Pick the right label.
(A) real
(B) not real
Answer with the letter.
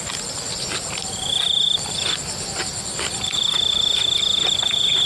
A